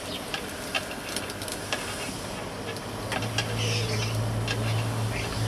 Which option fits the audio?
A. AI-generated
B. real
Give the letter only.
B